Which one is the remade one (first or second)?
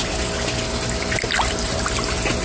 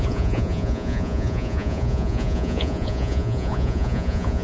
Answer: second